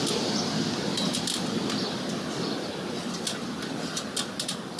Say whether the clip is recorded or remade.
recorded